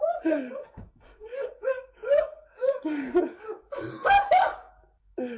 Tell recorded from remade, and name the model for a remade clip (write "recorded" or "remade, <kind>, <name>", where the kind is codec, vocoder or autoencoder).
remade, codec, DAC